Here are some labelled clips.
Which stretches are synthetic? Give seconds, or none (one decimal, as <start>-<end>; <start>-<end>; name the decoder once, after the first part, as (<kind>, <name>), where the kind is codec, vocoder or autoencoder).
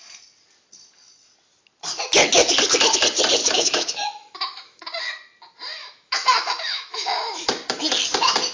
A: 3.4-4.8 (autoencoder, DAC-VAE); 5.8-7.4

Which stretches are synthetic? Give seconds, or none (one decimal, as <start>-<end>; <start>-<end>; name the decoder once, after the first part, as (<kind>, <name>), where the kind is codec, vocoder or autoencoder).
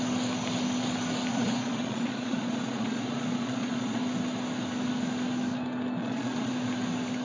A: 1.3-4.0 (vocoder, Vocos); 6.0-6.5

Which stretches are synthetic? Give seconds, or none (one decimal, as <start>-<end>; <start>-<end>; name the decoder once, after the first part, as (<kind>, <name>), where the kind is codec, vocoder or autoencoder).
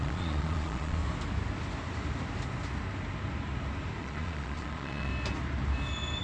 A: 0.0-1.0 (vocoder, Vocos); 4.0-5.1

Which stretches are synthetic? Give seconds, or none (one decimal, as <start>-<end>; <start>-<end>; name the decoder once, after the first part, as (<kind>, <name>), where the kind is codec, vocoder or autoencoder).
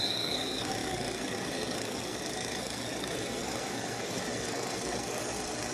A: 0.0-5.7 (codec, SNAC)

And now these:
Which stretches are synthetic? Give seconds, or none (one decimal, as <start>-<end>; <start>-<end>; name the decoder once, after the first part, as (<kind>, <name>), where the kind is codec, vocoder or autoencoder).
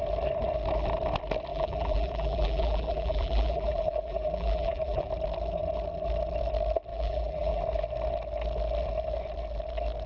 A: 1.5-5.1 (vocoder, BigVGAN v2); 6.9-7.6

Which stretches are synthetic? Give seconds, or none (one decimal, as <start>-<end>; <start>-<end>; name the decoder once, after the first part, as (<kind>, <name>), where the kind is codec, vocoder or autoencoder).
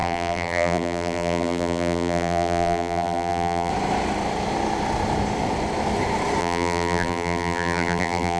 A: 0.0-3.7 (vocoder, BigVGAN v2); 6.4-8.4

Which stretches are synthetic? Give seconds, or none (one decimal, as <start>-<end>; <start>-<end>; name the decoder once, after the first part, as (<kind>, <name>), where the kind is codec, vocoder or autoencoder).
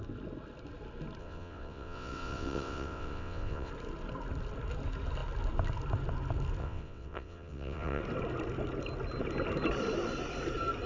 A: 1.2-3.7 (vocoder, WaveNeXt); 6.6-8.0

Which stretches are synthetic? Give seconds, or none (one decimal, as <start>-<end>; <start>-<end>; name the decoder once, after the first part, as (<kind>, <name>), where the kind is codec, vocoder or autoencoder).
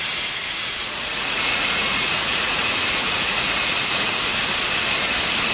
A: 0.8-4.1 (vocoder, Vocos)